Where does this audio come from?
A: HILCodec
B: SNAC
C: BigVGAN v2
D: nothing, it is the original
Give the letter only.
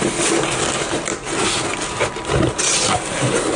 D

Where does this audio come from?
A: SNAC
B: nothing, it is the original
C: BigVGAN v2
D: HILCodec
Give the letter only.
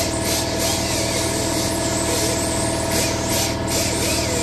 B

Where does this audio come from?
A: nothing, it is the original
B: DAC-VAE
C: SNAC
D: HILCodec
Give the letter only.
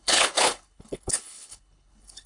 D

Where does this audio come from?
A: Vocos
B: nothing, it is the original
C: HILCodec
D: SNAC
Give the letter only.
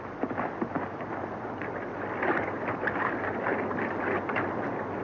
B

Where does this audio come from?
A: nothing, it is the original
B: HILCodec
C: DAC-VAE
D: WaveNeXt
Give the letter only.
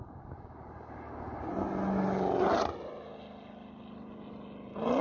A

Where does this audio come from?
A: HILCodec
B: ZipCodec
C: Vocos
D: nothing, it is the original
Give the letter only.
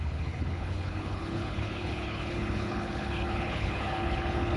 A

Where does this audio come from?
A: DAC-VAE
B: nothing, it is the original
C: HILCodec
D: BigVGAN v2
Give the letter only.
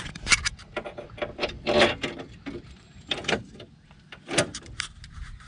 B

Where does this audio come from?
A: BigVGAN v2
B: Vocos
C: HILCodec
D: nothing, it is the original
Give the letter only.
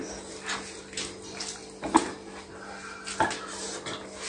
D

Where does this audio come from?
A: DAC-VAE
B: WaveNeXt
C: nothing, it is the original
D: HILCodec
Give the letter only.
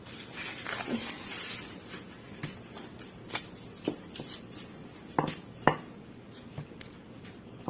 C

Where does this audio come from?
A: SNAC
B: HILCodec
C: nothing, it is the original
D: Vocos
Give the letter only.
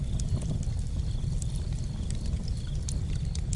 C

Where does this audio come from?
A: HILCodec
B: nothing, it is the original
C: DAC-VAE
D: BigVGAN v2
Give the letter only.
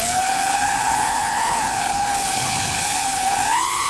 A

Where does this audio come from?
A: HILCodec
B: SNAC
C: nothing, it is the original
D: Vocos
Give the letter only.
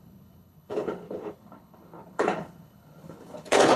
A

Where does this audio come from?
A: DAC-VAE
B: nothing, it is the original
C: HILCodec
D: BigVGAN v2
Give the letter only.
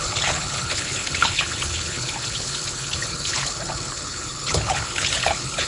C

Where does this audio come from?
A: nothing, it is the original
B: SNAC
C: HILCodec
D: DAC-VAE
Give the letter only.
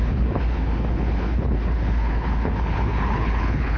C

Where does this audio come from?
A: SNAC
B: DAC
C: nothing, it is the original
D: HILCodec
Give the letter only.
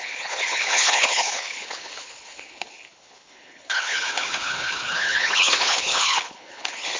D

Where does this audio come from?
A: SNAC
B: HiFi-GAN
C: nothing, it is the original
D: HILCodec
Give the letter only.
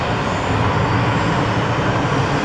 C